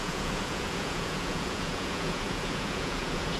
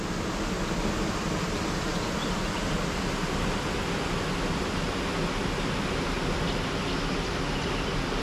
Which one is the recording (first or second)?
second